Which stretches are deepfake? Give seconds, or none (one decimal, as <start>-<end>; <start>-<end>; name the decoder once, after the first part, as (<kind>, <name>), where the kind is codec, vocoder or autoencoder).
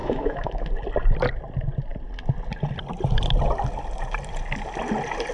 0.0-0.6 (autoencoder, DAC-VAE)